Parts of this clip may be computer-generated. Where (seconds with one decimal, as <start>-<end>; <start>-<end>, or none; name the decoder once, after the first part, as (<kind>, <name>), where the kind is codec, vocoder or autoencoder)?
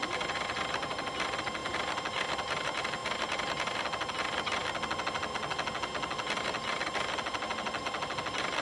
none